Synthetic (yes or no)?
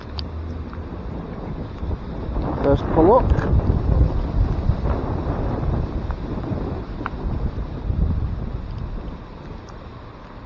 no